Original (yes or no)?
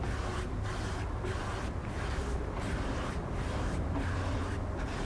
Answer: no